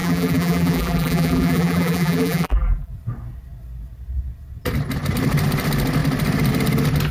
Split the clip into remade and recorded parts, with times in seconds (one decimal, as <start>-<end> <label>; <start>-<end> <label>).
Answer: 0.0-2.9 remade; 2.9-7.1 recorded